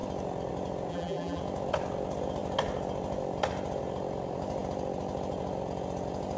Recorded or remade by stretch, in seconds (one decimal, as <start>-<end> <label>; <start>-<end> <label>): 0.0-0.9 recorded; 0.9-1.4 remade; 1.4-6.4 recorded